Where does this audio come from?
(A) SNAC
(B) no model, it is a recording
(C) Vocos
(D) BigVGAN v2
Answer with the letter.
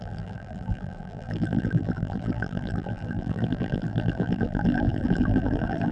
D